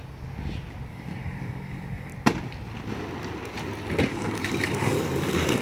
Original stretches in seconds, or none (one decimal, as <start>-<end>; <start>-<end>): 0.0-0.9; 2.1-4.1